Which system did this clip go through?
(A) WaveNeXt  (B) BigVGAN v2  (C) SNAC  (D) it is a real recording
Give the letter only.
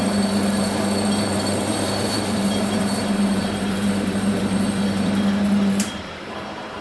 B